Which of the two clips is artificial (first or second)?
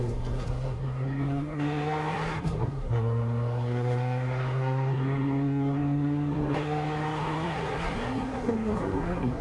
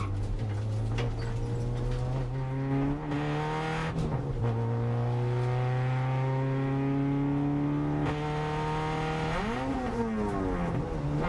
first